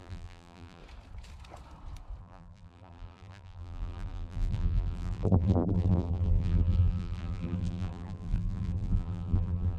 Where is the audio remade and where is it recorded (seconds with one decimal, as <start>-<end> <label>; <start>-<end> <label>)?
0.0-0.8 remade; 0.8-2.2 recorded; 2.2-9.8 remade